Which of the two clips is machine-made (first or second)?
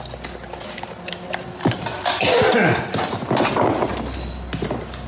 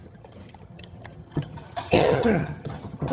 second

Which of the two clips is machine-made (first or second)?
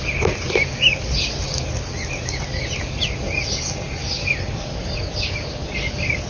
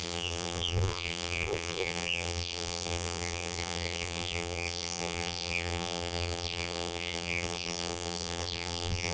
second